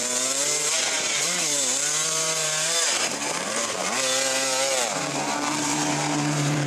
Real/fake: fake